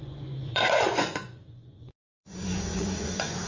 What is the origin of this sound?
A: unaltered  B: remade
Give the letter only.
B